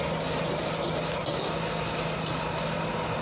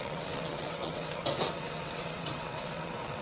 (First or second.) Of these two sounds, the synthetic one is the second